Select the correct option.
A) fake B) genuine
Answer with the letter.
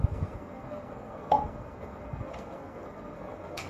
A